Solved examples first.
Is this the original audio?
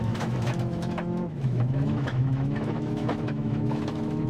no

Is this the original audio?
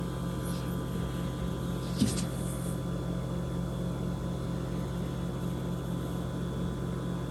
yes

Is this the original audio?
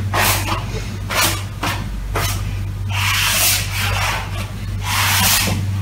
yes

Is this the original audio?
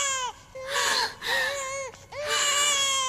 yes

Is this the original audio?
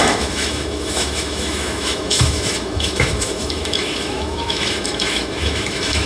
no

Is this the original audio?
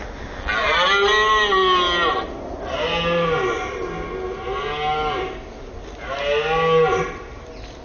yes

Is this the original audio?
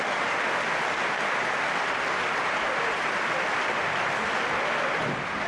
yes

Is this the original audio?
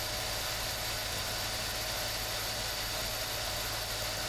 yes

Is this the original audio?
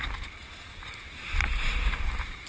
yes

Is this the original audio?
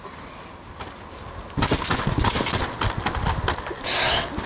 yes